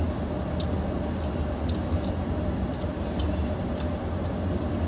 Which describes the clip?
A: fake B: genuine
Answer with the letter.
B